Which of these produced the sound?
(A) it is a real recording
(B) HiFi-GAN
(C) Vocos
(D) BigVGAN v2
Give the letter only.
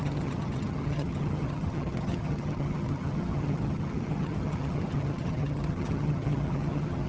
B